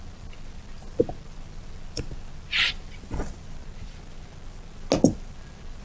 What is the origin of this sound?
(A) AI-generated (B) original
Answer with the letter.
B